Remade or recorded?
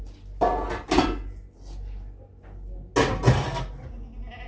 recorded